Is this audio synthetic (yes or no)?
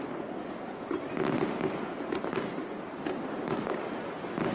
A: no